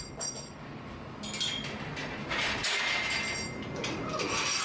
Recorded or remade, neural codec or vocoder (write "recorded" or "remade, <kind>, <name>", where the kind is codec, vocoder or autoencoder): recorded